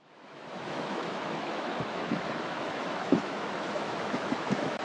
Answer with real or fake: fake